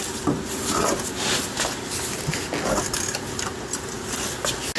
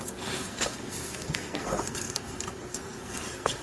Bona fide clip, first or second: first